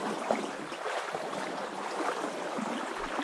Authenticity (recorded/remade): recorded